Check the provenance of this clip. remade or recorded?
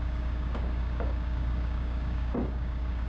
remade